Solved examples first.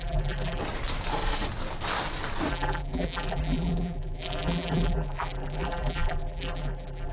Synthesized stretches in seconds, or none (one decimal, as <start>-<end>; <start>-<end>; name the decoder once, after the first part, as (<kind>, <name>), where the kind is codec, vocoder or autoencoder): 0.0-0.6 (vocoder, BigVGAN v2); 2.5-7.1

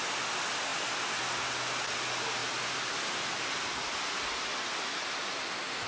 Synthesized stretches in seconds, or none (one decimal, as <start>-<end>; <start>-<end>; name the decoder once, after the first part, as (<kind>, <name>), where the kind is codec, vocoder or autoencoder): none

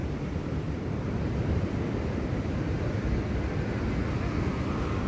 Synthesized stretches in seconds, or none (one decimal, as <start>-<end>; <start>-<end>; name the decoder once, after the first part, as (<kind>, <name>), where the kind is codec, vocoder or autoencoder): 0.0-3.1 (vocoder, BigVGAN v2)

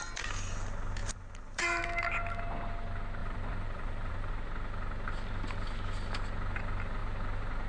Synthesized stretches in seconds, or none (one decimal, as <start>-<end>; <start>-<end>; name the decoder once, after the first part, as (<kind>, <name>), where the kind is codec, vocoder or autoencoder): 1.0-1.8 (vocoder, BigVGAN v2); 3.2-4.3

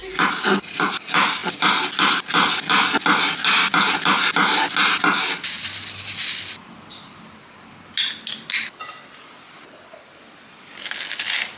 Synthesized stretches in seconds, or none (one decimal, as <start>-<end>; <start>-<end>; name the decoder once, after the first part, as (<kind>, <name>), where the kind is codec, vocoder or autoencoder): none

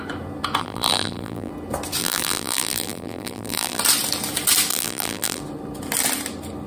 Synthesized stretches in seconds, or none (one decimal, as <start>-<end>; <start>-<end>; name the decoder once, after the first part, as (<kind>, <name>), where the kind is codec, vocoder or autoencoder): 0.6-1.5 (vocoder, BigVGAN v2); 2.0-3.8; 4.7-5.4

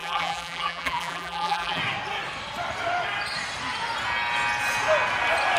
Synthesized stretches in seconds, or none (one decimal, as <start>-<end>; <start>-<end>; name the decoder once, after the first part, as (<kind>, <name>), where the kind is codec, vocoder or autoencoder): 0.0-1.8 (vocoder, BigVGAN v2)